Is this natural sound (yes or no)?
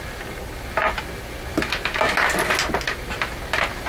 yes